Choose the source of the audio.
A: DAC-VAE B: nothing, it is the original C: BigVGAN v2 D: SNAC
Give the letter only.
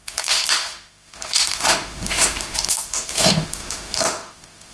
A